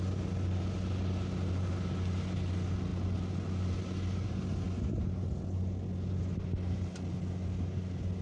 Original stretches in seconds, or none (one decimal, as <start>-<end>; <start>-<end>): 0.0-8.2